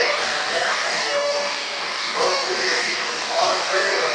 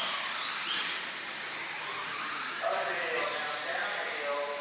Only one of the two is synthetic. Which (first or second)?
first